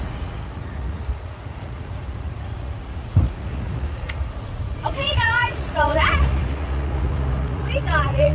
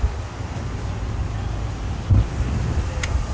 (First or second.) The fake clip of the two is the first